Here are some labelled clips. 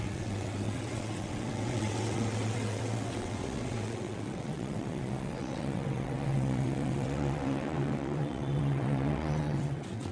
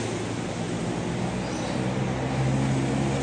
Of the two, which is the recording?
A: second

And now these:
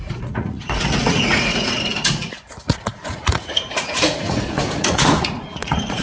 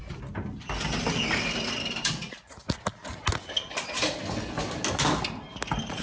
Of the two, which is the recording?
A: second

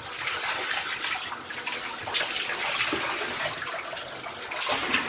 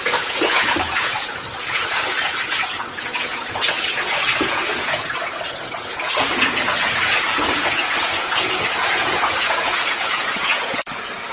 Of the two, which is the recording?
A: first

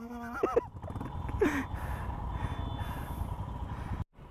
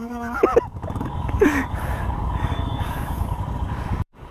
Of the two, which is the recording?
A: first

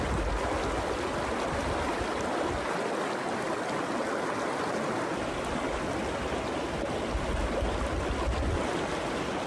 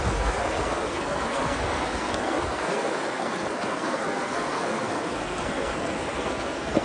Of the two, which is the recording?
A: first